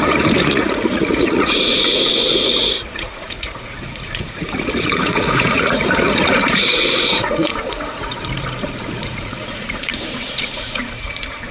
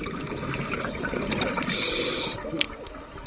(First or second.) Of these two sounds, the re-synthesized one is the first